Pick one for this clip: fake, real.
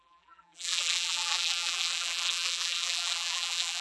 fake